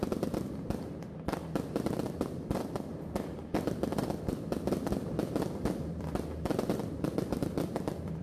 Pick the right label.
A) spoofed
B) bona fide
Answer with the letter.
A